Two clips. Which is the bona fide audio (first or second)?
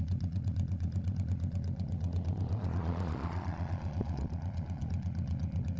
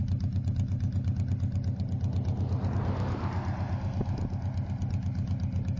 second